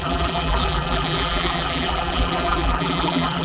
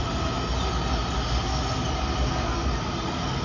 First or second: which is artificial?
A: first